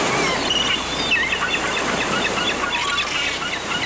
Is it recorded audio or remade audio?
recorded